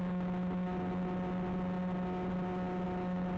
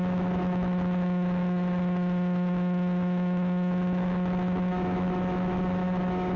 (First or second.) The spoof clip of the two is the second